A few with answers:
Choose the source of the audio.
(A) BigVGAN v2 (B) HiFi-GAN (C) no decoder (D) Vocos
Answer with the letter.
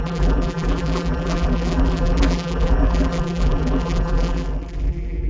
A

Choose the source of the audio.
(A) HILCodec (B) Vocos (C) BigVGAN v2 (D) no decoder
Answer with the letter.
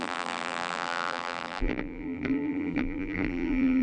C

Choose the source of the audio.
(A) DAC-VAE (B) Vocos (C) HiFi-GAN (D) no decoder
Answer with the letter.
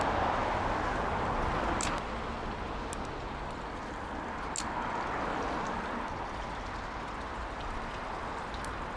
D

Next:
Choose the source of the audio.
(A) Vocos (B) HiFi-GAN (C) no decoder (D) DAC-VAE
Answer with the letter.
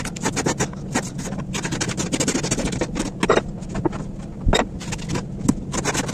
C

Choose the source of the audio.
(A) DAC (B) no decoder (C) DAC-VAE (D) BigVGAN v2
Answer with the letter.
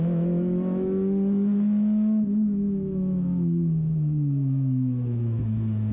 C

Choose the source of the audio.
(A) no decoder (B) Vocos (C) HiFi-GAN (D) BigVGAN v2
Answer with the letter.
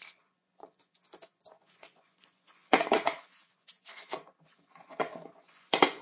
B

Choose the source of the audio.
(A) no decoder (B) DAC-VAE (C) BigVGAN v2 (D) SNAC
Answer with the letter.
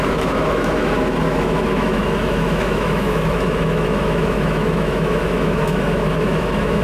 B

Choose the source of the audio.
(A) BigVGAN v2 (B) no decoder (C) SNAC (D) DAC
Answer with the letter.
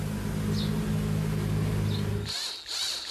B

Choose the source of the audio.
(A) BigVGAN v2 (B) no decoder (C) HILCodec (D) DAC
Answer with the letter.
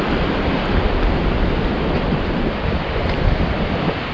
B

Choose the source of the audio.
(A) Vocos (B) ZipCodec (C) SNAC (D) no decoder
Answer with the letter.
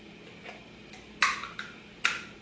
D